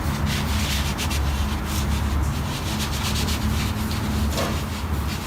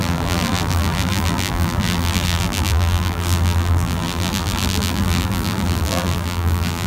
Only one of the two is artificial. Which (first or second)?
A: second